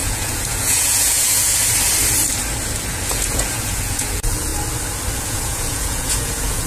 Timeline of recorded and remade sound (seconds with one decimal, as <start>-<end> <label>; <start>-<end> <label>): 0.0-1.6 remade; 1.6-3.1 recorded; 3.1-4.5 remade; 4.5-5.2 recorded; 5.2-6.7 remade